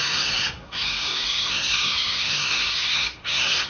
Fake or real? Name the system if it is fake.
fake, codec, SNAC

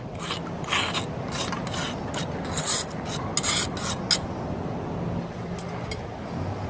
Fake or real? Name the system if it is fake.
real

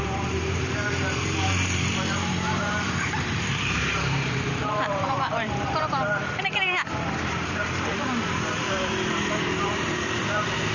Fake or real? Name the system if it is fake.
fake, vocoder, BigVGAN v2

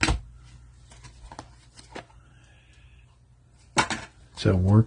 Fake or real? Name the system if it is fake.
real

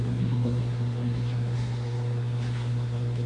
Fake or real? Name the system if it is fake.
fake, codec, SNAC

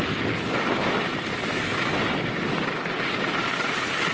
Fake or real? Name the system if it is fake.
real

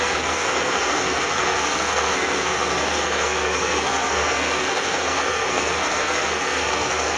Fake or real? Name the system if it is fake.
fake, codec, SNAC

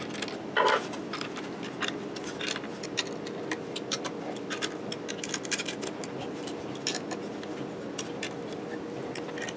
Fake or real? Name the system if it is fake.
real